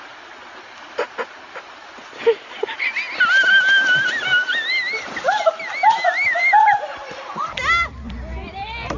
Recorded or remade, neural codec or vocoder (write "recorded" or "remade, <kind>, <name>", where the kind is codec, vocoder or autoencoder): recorded